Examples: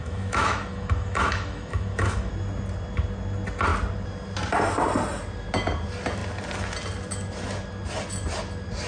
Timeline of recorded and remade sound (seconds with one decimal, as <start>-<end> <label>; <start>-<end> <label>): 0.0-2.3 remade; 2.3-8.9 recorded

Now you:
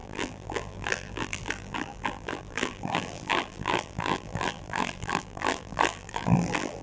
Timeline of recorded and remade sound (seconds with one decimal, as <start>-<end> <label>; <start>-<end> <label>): 0.0-6.8 remade

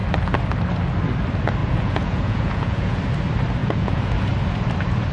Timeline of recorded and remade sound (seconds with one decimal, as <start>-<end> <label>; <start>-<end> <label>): 0.0-1.6 recorded; 1.6-3.0 remade; 3.0-3.6 recorded; 3.6-4.3 remade; 4.3-5.1 recorded